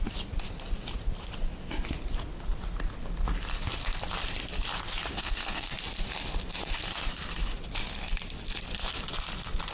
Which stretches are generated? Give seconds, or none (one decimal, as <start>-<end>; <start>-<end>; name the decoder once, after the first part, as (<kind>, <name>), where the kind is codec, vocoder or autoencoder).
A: 5.1-5.7 (codec, SNAC)